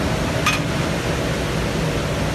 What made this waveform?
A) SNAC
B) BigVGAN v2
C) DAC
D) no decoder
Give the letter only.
D